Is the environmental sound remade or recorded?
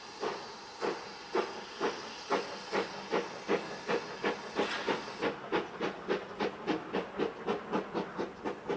recorded